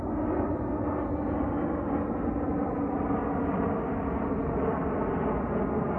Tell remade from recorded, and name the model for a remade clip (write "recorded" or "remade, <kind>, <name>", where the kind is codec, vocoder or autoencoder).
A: recorded